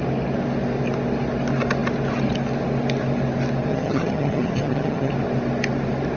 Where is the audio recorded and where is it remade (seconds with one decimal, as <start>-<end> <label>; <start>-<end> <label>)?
0.0-3.7 recorded; 3.7-5.1 remade; 5.1-6.2 recorded